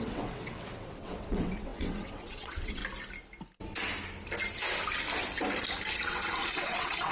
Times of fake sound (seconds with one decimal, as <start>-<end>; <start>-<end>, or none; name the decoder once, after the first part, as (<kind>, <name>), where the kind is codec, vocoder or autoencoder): 0.0-2.8 (vocoder, WaveNeXt); 5.9-7.1